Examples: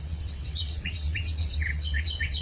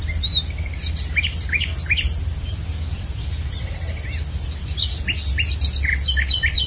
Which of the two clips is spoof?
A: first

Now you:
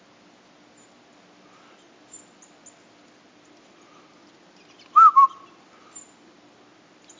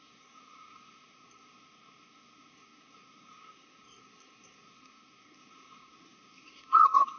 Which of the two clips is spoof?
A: second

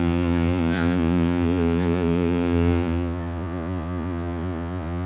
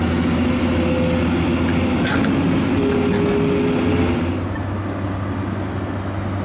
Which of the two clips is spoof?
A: first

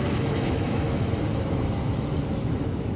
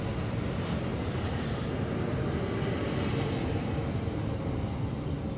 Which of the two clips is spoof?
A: first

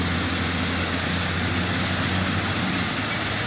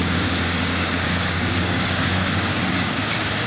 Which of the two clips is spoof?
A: second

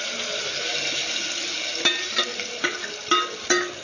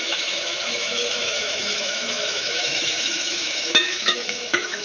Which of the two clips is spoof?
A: second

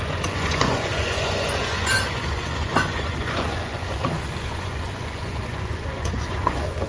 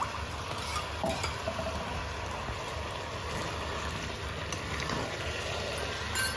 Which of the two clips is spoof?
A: first